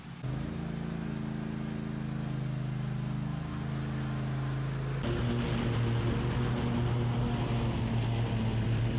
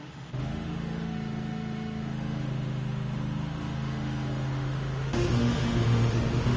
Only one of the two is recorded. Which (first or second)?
first